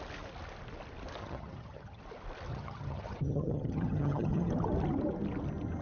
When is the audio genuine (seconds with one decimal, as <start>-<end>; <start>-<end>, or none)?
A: 0.0-1.2; 2.0-2.5; 4.5-5.8